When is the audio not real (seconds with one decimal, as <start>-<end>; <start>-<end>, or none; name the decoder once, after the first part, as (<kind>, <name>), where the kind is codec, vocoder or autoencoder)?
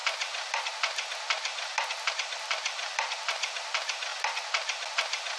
2.1-5.4 (vocoder, BigVGAN v2)